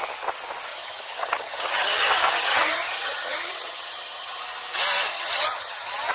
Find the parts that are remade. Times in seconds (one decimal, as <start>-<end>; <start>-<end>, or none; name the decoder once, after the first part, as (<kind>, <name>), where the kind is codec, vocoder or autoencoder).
0.7-4.4 (vocoder, HiFi-GAN); 5.1-6.1